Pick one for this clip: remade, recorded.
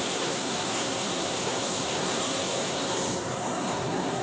remade